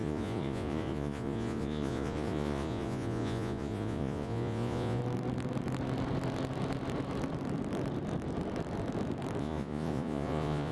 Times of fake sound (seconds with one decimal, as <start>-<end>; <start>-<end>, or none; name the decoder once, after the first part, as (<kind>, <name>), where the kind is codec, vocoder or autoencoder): 0.0-5.0 (vocoder, Vocos); 9.4-10.7